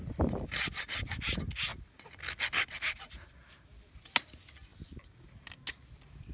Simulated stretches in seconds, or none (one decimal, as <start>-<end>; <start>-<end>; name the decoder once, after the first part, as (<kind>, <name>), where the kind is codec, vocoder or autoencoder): none